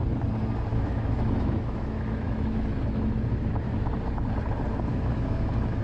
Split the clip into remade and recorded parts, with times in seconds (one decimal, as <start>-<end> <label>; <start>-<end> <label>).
0.0-0.7 recorded; 0.7-3.9 remade; 3.9-4.9 recorded; 4.9-5.8 remade